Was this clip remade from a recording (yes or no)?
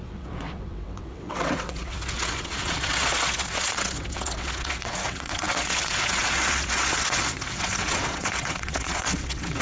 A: yes